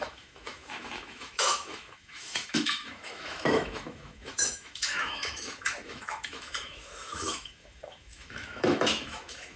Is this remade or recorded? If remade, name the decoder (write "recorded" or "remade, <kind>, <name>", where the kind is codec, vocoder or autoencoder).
remade, autoencoder, DAC-VAE